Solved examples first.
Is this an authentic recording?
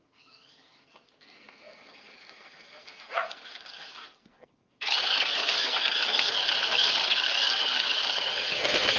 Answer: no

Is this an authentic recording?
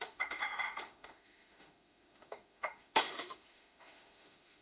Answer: no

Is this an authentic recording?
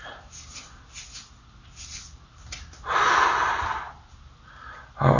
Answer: yes